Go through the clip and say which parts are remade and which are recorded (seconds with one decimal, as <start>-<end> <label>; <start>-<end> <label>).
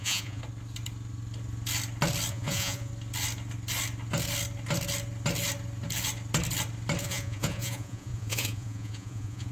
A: 0.0-0.4 remade; 0.4-2.3 recorded; 2.3-2.9 remade; 2.9-7.0 recorded; 7.0-9.5 remade